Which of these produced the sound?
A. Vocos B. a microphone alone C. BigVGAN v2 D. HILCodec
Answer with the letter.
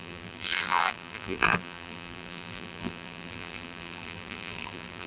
C